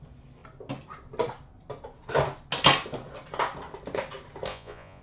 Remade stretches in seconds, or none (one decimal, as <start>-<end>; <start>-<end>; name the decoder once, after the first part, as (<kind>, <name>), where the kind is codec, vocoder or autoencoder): 4.5-5.0 (vocoder, Vocos)